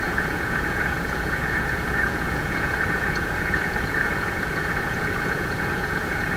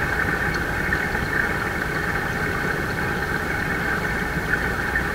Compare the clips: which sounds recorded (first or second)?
second